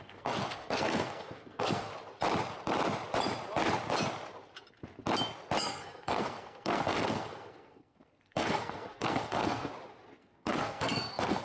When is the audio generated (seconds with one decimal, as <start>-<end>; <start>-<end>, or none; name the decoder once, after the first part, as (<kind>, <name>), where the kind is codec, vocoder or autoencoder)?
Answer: 0.0-1.9 (codec, SNAC); 5.6-9.7; 10.2-11.4